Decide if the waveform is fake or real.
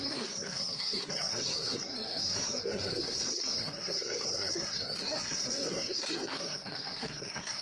fake